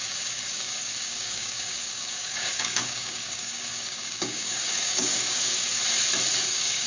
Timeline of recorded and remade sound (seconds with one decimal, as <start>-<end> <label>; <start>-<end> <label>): 0.0-5.8 remade; 5.8-6.5 recorded; 6.5-6.9 remade